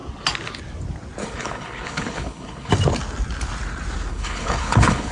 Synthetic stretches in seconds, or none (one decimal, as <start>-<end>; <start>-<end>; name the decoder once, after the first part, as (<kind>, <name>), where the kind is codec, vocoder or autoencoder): 1.2-2.7 (codec, HILCodec); 4.1-5.1